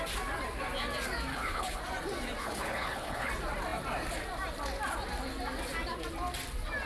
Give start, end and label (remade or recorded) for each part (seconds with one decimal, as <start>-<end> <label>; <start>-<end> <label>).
0.0-1.3 recorded; 1.3-1.8 remade; 1.8-2.4 recorded; 2.4-3.3 remade; 3.3-6.9 recorded